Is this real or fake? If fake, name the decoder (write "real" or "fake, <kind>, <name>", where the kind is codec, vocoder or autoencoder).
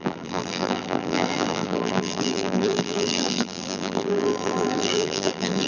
fake, vocoder, BigVGAN v2